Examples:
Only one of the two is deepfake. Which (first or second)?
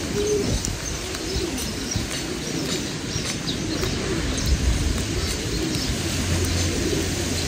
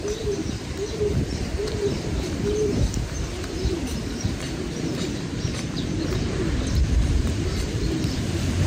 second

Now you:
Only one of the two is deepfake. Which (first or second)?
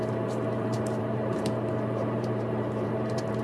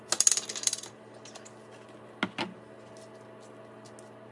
first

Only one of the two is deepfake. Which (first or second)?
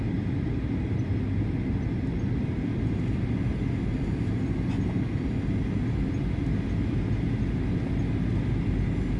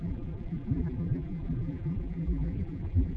second